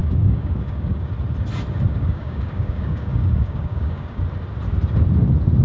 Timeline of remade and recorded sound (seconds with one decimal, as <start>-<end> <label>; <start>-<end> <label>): 0.0-1.1 remade; 1.1-1.9 recorded; 1.9-4.2 remade; 4.2-5.6 recorded